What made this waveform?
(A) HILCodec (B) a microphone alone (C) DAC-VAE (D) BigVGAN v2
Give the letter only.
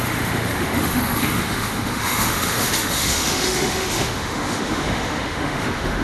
C